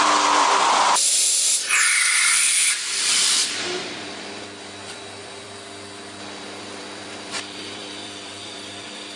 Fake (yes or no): yes